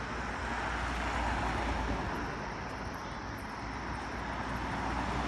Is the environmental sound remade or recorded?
recorded